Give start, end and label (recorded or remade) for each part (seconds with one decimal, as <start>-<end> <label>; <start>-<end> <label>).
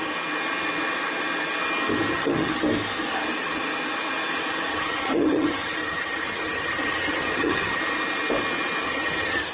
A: 0.0-2.1 recorded; 2.1-2.6 remade; 2.6-4.7 recorded; 4.7-7.8 remade; 7.8-8.8 recorded; 8.8-9.5 remade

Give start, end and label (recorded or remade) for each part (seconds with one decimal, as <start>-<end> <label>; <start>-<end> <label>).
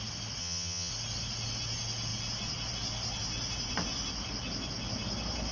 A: 0.0-0.4 recorded; 0.4-0.9 remade; 0.9-5.5 recorded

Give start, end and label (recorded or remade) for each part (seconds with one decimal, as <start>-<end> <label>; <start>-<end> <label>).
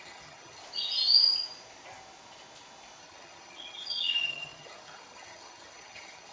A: 0.0-0.6 remade; 0.6-3.0 recorded; 3.0-6.3 remade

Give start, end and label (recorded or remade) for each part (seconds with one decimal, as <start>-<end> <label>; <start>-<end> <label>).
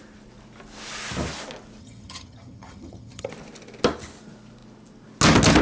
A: 0.0-1.8 recorded; 1.8-3.3 remade; 3.3-5.6 recorded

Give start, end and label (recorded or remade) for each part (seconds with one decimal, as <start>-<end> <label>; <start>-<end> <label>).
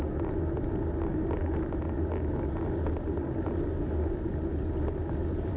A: 0.0-5.6 recorded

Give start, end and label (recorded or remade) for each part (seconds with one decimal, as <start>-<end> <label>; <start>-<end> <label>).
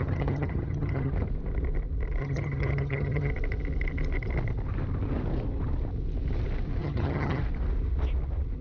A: 0.0-1.1 remade; 1.1-2.2 recorded; 2.2-3.3 remade; 3.3-6.8 recorded; 6.8-7.4 remade; 7.4-8.6 recorded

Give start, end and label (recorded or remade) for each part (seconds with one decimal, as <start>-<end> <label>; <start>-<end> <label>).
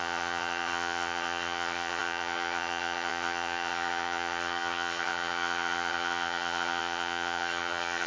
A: 0.0-8.1 remade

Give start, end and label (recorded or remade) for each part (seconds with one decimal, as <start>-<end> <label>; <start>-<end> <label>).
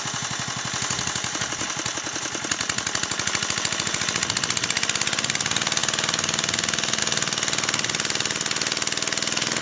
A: 0.0-9.6 recorded